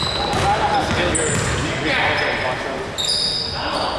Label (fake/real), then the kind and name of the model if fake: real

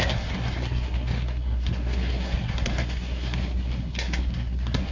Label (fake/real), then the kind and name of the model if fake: fake, codec, SNAC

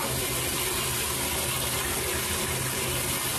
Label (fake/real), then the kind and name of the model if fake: real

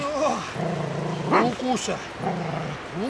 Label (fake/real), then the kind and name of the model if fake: real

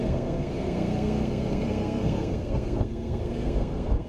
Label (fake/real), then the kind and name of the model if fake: fake, codec, SNAC